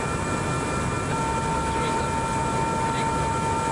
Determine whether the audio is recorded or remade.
recorded